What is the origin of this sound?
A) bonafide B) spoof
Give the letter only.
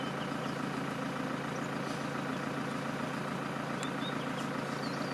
A